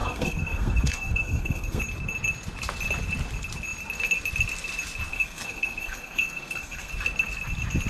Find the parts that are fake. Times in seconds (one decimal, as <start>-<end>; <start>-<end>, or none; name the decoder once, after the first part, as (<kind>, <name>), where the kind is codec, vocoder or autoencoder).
0.0-1.8 (codec, SNAC); 5.1-6.9